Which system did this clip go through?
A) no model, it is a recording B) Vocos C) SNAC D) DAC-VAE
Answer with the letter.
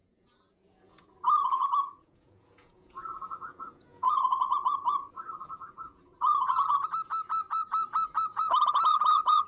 B